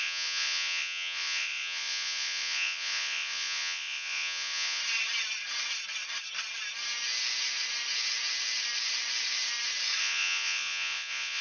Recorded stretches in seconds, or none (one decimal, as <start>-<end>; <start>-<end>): 4.8-10.0

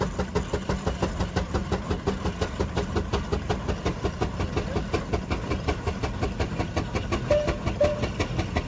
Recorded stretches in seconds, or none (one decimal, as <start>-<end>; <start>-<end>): 0.0-8.7

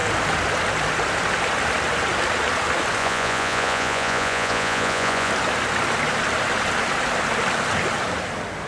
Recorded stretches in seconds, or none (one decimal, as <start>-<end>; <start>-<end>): 0.0-3.0; 5.3-8.7

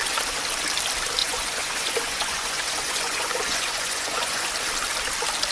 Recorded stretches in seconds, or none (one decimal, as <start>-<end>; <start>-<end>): 0.0-1.2; 4.5-5.5

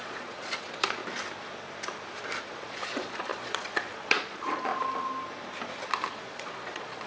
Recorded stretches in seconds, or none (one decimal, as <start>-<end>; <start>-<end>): 1.0-2.4; 4.7-6.1